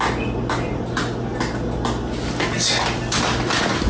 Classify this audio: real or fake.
real